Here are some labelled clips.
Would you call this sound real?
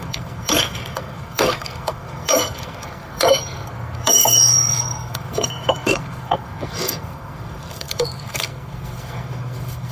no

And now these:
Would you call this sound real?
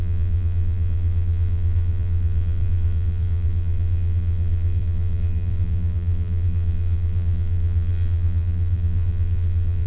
no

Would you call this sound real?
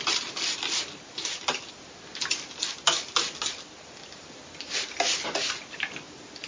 yes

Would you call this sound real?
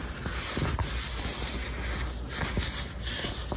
yes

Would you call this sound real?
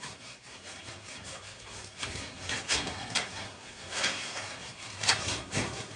no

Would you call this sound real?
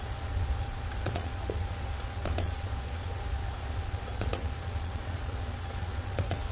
no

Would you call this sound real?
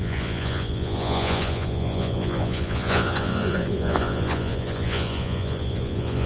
no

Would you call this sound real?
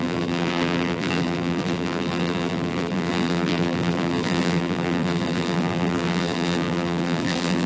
no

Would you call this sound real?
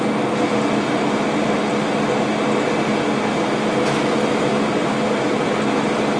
yes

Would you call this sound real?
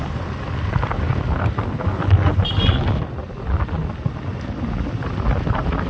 yes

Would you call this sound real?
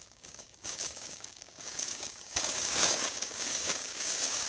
no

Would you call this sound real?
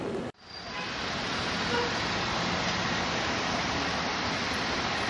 yes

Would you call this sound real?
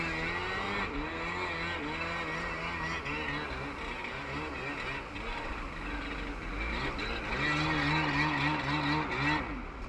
yes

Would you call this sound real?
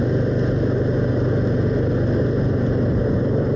yes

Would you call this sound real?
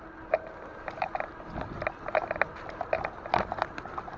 yes